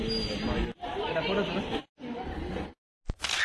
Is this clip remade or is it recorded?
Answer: recorded